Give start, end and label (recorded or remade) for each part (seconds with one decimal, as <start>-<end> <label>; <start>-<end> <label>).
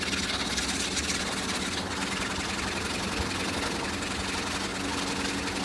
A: 0.0-5.6 recorded